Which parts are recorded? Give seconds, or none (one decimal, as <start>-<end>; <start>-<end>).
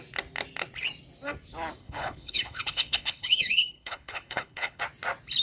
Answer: 0.0-1.8; 4.8-5.4